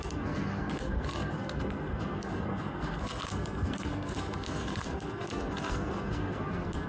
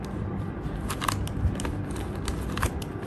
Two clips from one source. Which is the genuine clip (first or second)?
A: second